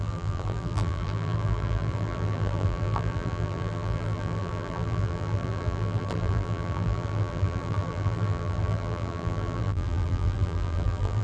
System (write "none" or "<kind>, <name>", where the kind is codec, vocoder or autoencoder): vocoder, BigVGAN v2